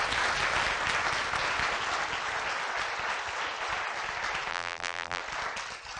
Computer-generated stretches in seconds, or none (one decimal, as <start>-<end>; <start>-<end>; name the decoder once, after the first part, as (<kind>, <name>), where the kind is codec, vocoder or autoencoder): 4.5-5.2 (vocoder, BigVGAN v2)